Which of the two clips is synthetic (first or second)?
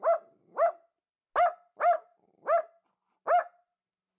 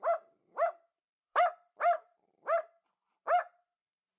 second